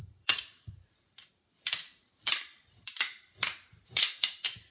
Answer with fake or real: fake